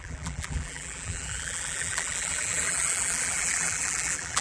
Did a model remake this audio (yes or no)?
yes